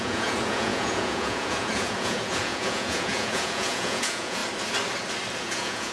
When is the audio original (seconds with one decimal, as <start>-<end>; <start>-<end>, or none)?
4.4-5.4